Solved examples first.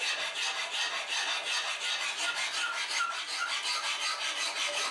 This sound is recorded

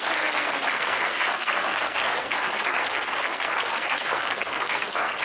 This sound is remade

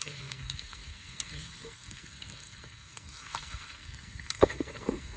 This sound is remade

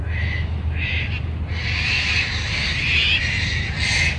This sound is recorded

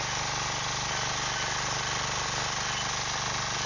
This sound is recorded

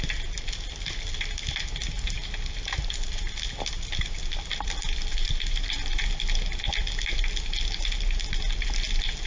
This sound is recorded